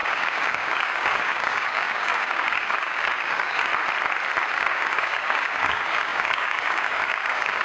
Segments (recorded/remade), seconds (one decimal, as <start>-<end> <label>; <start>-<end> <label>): 0.0-3.7 remade; 3.7-4.5 recorded; 4.5-7.6 remade